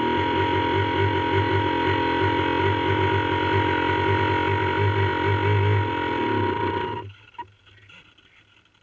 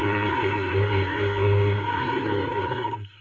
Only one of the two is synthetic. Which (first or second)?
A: second